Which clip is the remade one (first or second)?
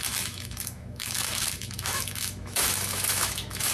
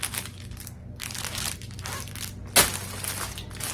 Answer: first